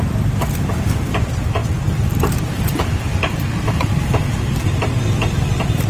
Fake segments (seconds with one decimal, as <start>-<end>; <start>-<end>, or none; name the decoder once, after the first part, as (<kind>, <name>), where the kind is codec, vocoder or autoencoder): 1.6-4.7 (vocoder, BigVGAN v2)